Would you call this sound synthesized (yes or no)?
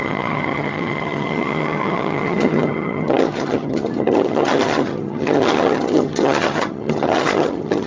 yes